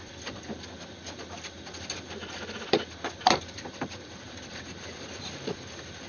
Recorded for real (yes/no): yes